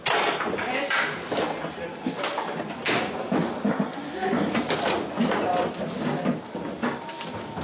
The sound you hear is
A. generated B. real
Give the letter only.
B